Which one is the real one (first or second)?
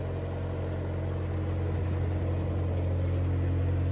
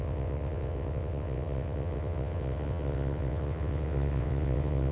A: first